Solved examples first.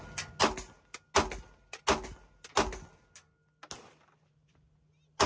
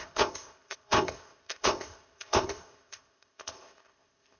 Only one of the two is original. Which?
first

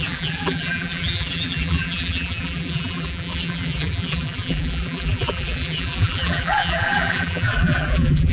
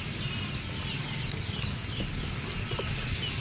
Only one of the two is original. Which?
second